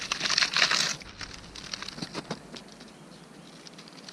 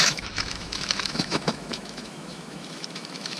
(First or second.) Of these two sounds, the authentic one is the first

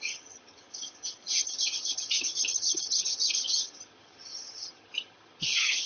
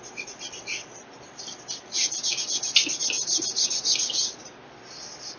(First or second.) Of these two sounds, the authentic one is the second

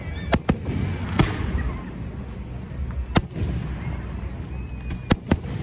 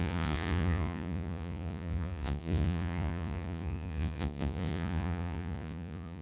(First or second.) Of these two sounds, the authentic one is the first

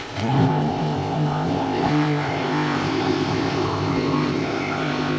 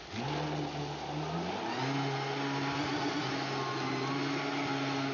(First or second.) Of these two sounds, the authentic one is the second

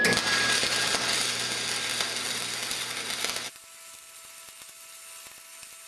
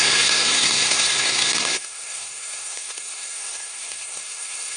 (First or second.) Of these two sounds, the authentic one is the first